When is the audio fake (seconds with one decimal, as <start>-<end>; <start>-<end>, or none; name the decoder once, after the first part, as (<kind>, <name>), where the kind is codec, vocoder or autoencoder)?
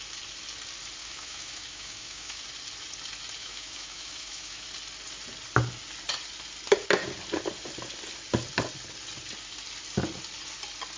1.0-2.4 (autoencoder, DAC-VAE); 3.4-4.7